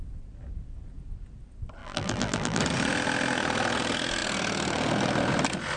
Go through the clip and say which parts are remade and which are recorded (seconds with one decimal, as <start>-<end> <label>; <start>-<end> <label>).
0.0-1.8 recorded; 1.8-2.6 remade; 2.6-5.8 recorded